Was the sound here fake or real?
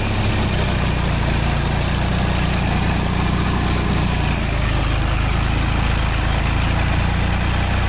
real